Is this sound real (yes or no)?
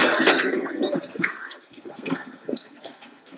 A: no